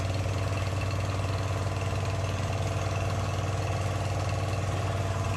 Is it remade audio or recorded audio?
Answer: recorded